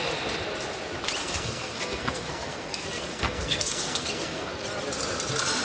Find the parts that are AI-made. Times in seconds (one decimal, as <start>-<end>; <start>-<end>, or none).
1.2-4.6